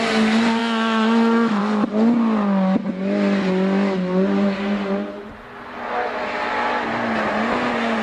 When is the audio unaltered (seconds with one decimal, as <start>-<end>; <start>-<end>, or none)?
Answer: 0.0-0.6; 1.6-8.0